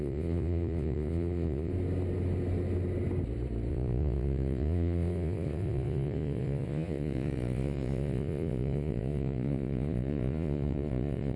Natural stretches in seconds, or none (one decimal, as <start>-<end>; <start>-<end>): 1.7-3.7